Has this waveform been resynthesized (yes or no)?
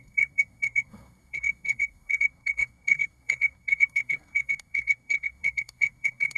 yes